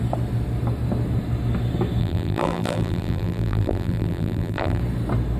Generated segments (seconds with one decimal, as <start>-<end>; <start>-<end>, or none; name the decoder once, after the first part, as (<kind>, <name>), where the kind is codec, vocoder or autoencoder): 2.0-4.8 (vocoder, BigVGAN v2)